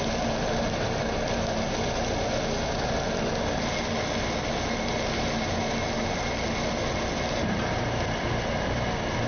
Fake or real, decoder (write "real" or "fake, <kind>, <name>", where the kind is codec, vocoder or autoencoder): real